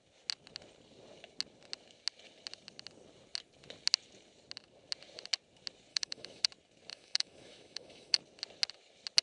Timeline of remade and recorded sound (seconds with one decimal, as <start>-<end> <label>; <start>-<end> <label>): 0.0-5.9 recorded; 5.9-6.4 remade; 6.4-6.9 recorded; 6.9-8.2 remade; 8.2-9.2 recorded